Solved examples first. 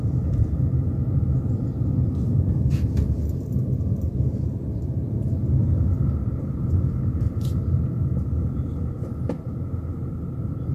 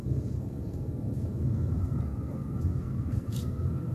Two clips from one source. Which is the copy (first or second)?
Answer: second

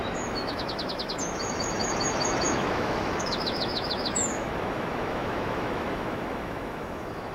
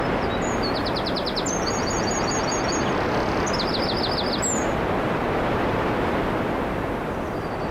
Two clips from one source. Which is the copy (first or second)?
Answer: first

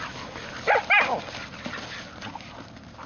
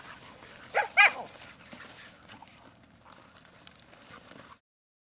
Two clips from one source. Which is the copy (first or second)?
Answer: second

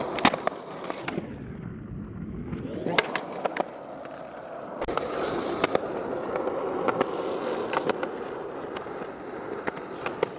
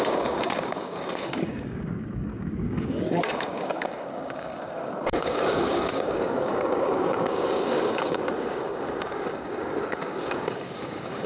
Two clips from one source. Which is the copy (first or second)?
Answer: second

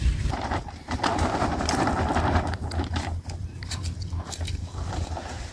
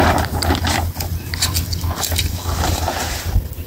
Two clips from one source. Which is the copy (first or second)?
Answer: first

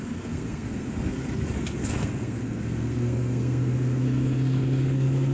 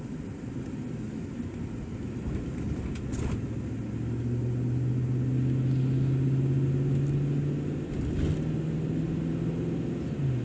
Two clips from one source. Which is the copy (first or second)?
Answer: first